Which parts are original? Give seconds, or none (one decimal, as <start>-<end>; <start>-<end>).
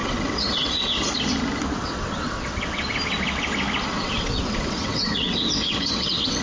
1.1-1.8; 2.8-3.9